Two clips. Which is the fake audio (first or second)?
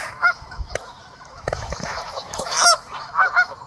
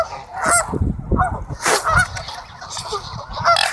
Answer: first